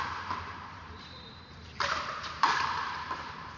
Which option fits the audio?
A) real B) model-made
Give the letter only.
B